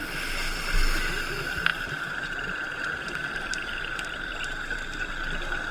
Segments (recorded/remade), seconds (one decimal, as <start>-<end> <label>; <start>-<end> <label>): 0.0-1.7 recorded; 1.7-5.1 remade; 5.1-5.7 recorded